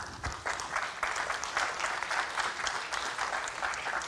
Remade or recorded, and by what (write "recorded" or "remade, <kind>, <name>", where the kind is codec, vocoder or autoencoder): recorded